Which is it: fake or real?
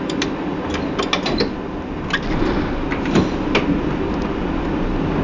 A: real